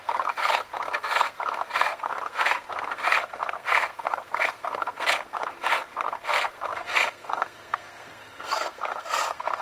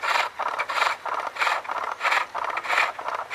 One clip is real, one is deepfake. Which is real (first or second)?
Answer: second